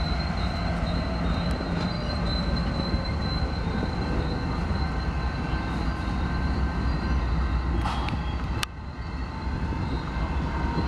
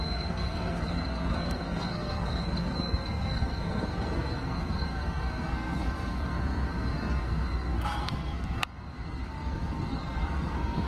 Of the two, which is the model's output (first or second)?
second